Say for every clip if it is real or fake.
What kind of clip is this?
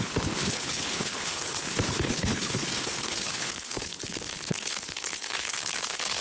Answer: fake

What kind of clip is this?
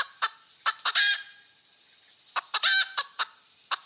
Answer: real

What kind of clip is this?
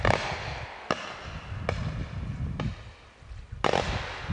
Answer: real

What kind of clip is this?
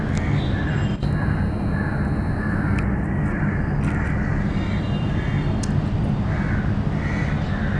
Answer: real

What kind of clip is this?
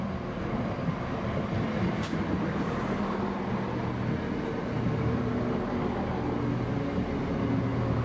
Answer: real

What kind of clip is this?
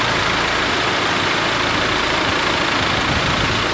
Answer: real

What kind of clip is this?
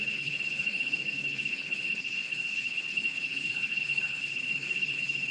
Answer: fake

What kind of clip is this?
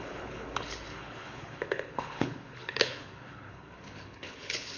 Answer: fake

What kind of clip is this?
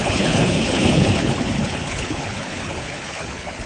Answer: fake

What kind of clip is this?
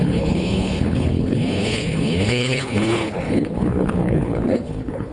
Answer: fake